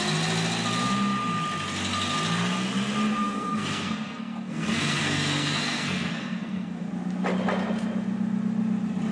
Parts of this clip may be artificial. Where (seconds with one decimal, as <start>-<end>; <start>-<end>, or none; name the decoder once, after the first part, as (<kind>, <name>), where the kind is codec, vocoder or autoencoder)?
3.1-6.9 (codec, SNAC)

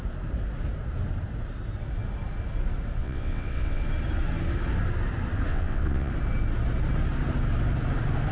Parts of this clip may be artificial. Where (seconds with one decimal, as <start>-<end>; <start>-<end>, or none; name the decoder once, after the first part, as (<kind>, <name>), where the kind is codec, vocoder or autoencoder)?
3.0-3.8 (vocoder, WaveNeXt); 5.5-6.1

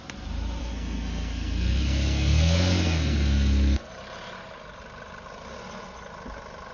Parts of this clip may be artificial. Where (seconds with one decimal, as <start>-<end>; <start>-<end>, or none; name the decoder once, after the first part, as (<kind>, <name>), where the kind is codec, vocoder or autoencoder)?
0.6-3.9 (codec, SNAC)

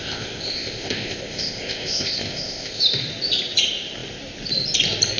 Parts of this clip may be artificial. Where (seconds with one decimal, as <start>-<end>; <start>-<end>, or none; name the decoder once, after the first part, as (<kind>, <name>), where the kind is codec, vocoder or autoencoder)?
0.0-2.8 (codec, ZipCodec)

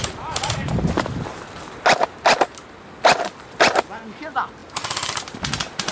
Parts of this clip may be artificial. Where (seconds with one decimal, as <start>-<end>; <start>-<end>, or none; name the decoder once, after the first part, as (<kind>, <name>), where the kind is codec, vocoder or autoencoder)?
none